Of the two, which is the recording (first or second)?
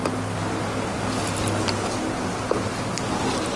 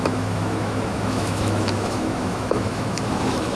first